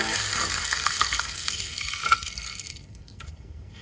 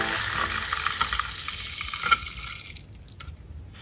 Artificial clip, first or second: first